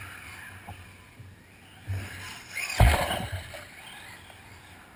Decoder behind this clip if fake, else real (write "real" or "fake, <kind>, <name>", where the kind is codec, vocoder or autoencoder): real